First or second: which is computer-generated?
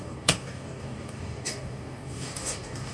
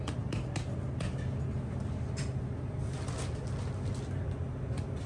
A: first